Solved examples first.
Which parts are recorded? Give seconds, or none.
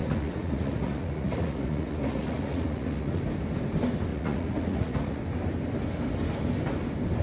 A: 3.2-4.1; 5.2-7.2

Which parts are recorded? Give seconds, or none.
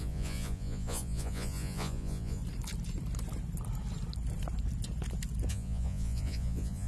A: 2.4-5.5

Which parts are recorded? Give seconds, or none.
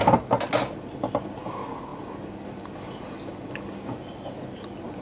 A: 0.0-5.0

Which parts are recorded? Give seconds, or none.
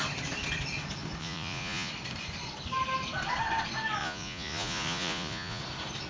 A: 0.0-1.2; 1.9-4.0; 5.6-6.1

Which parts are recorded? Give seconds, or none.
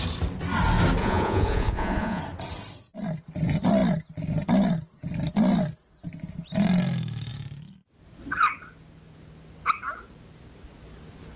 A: 0.0-1.0; 2.2-11.4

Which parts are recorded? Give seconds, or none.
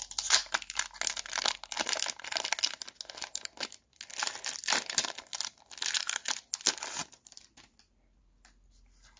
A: 0.0-9.2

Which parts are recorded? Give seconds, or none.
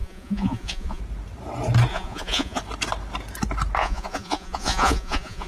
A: 1.0-1.9; 2.6-3.8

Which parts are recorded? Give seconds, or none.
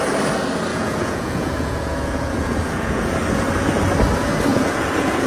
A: 0.0-0.7; 3.1-4.5